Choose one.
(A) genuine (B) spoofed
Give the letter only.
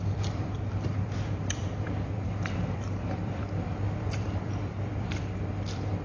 B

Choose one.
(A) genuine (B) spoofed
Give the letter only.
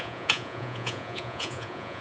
B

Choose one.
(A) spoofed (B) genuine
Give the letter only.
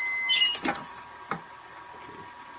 B